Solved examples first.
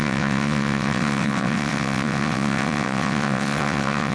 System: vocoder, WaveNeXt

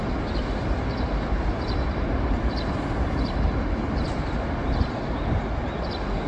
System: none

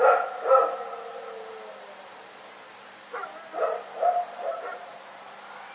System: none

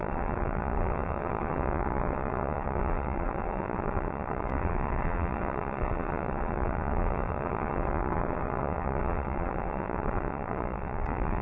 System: vocoder, WaveNeXt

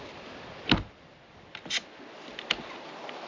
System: none